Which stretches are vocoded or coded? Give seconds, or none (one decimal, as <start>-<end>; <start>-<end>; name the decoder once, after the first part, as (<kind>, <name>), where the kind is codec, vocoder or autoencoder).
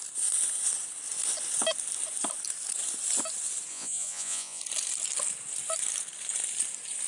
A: 3.7-4.6 (vocoder, Vocos)